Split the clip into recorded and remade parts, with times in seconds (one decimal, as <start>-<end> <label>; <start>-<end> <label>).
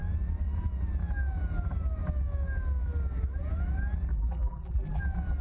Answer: 0.0-4.1 recorded; 4.1-5.0 remade; 5.0-5.4 recorded